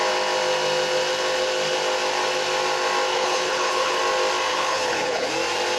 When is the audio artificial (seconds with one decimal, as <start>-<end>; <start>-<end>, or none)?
3.1-4.0; 4.5-5.3